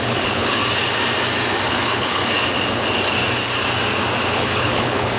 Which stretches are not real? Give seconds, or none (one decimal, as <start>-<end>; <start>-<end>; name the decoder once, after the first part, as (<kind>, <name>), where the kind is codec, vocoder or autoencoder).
0.0-0.6 (codec, HILCodec); 1.7-2.2; 4.3-5.2